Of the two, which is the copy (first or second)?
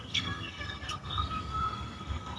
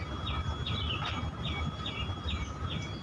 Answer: first